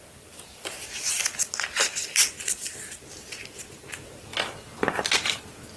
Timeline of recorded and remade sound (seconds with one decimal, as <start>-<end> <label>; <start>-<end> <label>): 0.0-5.8 recorded